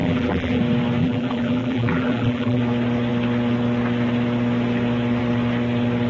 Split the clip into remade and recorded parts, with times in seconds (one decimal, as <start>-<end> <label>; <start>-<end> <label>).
0.0-0.6 remade; 0.6-1.0 recorded; 1.0-2.6 remade; 2.6-6.1 recorded